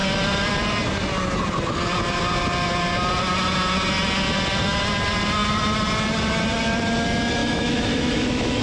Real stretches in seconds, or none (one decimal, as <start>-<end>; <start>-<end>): 0.0-7.4